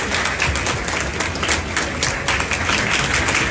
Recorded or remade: recorded